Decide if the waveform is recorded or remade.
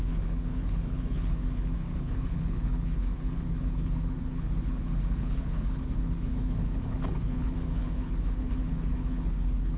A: remade